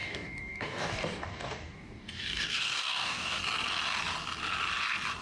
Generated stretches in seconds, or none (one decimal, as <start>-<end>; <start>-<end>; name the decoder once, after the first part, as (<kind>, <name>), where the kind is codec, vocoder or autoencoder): 0.0-3.4 (codec, DAC)

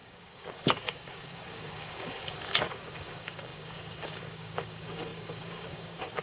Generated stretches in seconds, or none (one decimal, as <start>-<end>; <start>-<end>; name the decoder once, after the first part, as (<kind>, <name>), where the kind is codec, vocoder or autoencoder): 0.0-6.2 (codec, DAC)

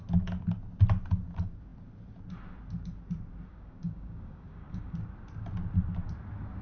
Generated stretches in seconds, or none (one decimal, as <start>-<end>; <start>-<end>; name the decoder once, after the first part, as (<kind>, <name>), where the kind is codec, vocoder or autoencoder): 3.5-5.0 (codec, DAC)

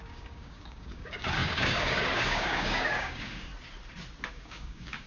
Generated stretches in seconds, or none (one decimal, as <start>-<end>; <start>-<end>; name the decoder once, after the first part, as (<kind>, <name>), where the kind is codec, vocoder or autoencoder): 0.0-3.5 (codec, DAC); 4.3-5.1